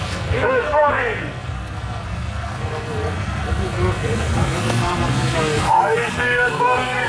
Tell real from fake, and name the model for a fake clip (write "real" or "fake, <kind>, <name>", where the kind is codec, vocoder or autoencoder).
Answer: fake, codec, SNAC